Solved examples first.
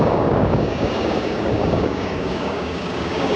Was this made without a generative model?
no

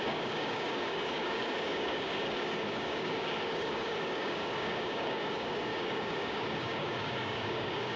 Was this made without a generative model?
no